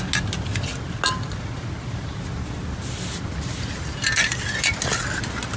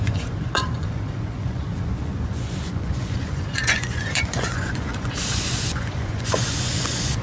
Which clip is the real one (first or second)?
first